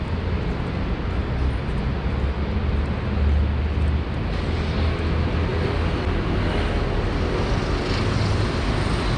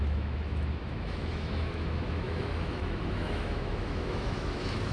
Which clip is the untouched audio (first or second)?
first